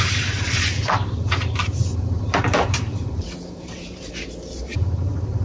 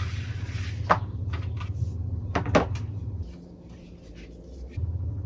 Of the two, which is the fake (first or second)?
first